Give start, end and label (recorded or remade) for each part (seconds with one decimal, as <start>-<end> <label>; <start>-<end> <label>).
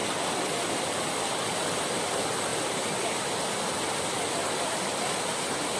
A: 0.0-5.8 recorded